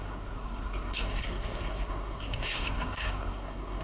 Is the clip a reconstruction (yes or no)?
yes